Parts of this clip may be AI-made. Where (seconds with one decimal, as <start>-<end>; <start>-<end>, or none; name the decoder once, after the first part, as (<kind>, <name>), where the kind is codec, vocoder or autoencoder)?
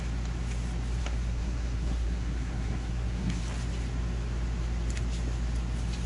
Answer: 1.0-3.4 (codec, SNAC)